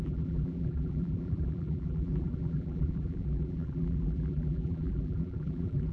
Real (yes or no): no